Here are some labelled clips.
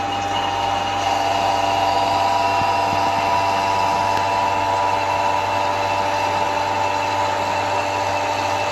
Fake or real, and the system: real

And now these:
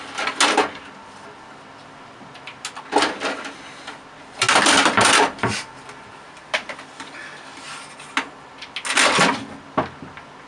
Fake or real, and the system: real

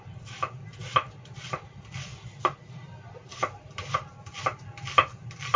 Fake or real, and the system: real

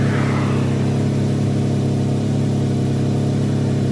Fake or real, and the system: real